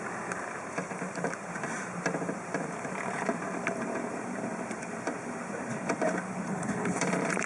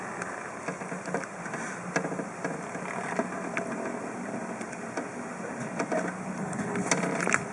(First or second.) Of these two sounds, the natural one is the second